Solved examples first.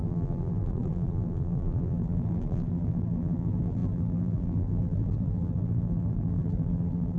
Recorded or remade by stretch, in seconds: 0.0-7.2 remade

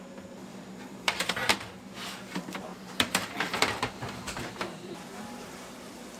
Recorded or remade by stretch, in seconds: 0.0-0.5 recorded; 0.5-1.3 remade; 1.3-2.7 recorded; 2.7-4.5 remade; 4.5-6.2 recorded

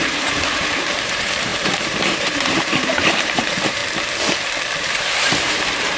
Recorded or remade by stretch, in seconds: 0.0-3.8 remade; 3.8-4.8 recorded; 4.8-6.0 remade

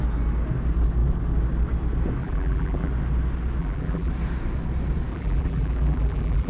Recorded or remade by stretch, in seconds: 0.0-2.2 recorded; 2.2-2.9 remade; 2.9-3.6 recorded; 3.6-4.1 remade; 4.1-5.1 recorded; 5.1-6.5 remade

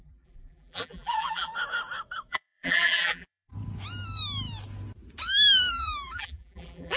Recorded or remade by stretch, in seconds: 0.0-1.5 remade; 1.5-2.3 recorded; 2.3-3.5 remade; 3.5-5.7 recorded; 5.7-7.0 remade